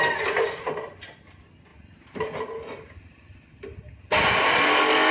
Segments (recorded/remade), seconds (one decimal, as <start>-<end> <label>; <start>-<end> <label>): 0.0-1.7 recorded; 1.7-5.1 remade